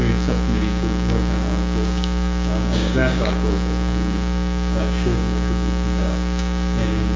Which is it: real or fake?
fake